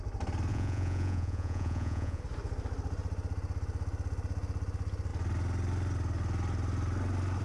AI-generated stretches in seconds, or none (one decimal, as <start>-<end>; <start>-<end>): 0.5-2.2